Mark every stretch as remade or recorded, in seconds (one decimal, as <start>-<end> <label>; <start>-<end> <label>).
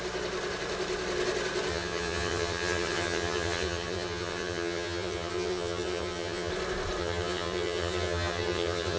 0.0-1.7 recorded; 1.7-6.5 remade; 6.5-7.0 recorded; 7.0-9.0 remade